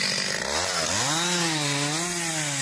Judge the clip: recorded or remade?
recorded